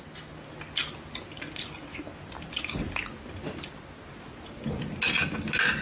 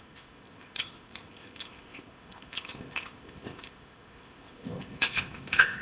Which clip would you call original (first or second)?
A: first